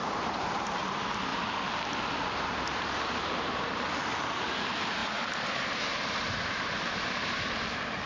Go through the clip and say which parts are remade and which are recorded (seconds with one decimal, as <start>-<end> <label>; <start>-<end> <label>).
0.0-0.6 remade; 0.6-5.0 recorded; 5.0-7.5 remade; 7.5-8.1 recorded